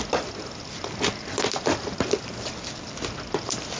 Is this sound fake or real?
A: real